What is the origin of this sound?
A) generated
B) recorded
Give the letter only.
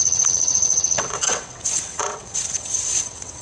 A